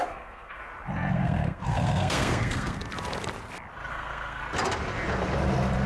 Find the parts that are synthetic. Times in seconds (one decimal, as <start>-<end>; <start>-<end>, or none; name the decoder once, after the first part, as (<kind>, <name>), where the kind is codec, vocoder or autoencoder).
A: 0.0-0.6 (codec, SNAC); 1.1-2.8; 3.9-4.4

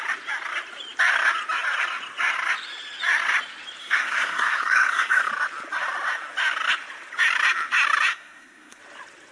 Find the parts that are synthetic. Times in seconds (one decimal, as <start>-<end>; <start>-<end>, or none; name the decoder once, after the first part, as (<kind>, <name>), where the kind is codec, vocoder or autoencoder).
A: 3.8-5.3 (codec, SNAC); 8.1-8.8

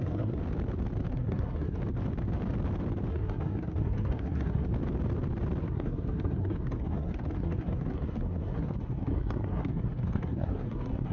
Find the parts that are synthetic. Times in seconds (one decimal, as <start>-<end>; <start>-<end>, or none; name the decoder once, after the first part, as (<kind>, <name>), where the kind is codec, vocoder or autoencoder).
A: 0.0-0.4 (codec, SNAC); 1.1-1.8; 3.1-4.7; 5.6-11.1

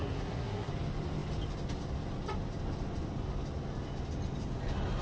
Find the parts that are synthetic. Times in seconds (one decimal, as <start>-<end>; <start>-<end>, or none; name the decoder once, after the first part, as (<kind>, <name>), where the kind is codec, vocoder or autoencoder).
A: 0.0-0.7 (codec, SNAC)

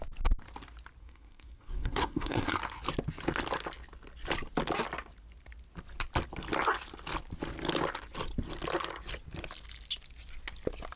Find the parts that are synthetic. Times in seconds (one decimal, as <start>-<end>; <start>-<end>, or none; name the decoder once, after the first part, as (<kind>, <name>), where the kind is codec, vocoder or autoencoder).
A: 1.0-2.6 (codec, SNAC)

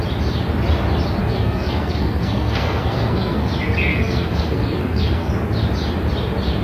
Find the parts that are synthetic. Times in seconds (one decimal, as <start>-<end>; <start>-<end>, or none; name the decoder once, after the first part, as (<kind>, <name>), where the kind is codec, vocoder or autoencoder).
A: 1.2-3.5 (codec, SNAC); 3.9-5.3

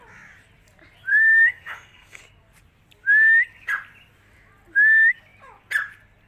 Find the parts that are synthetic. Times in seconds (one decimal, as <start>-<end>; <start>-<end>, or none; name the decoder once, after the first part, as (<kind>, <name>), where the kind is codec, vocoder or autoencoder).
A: 1.1-2.2 (codec, SNAC)

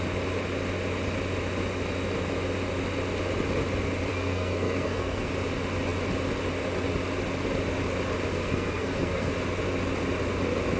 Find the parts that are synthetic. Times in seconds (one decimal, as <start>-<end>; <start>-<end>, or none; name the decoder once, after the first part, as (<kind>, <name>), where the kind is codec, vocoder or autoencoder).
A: 4.1-5.3 (codec, SNAC); 8.3-9.3